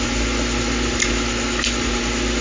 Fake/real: real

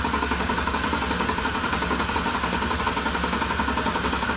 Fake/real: real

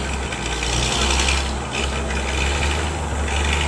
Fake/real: real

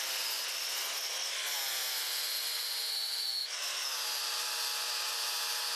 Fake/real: real